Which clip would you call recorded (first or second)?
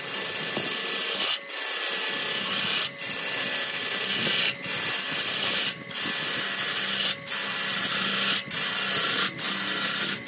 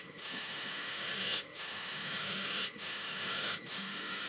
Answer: first